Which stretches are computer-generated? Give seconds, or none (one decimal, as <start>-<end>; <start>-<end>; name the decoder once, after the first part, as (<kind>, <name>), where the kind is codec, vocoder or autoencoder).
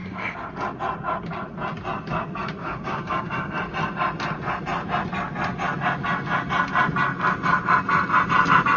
2.6-3.5 (codec, DAC)